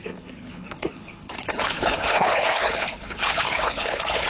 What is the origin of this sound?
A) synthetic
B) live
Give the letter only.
A